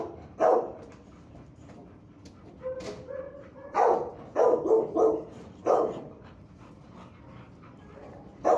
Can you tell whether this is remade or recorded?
recorded